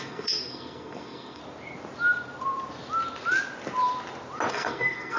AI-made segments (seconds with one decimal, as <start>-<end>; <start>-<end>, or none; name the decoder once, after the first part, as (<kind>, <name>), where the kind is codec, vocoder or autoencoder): 0.0-1.4 (codec, SNAC); 4.5-5.2